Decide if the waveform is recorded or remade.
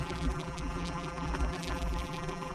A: remade